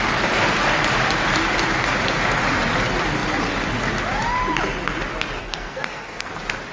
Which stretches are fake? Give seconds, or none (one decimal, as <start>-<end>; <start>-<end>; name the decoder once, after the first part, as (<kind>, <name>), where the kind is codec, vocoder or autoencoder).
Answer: 5.4-6.3 (codec, SNAC)